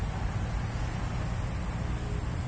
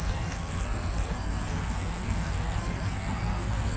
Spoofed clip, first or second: second